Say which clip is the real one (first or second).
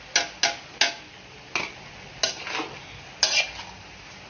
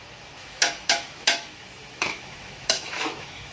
first